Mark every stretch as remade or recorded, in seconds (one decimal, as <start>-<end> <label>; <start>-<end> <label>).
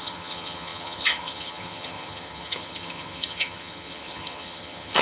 0.0-5.0 remade